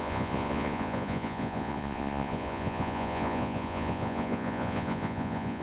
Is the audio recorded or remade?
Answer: remade